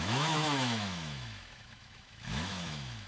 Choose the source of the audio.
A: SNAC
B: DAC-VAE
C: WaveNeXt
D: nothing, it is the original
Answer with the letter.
B